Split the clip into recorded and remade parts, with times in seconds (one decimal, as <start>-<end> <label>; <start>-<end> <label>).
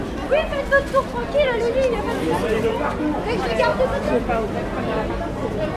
0.0-5.8 recorded